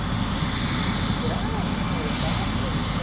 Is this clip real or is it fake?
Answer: real